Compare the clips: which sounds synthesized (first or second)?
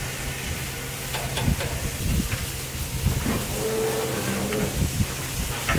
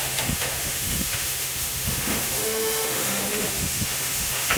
second